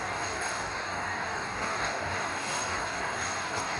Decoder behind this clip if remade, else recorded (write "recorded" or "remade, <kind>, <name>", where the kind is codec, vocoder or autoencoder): remade, codec, DAC